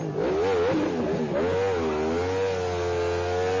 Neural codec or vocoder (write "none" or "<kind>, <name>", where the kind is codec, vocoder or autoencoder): none